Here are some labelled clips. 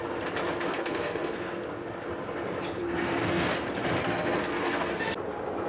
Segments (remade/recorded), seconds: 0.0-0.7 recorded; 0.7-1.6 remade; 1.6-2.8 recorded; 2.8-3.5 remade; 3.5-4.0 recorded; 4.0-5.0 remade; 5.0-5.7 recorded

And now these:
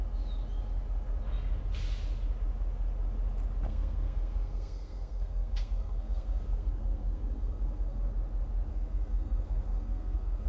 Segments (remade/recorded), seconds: 0.0-3.7 recorded; 3.7-8.1 remade; 8.1-8.7 recorded; 8.7-10.5 remade

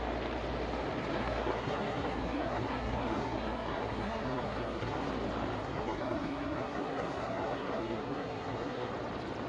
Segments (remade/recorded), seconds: 0.0-1.1 recorded; 1.1-5.1 remade; 5.1-5.6 recorded; 5.6-8.9 remade; 8.9-9.5 recorded

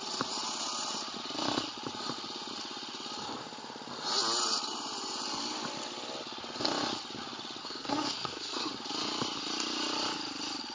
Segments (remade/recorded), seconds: 0.0-7.6 recorded; 7.6-8.7 remade; 8.7-10.7 recorded